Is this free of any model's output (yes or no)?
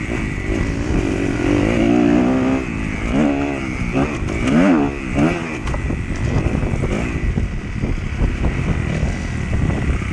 yes